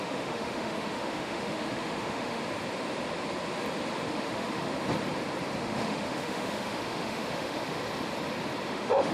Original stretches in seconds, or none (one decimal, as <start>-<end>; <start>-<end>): 2.4-4.1; 4.7-5.6; 7.8-8.7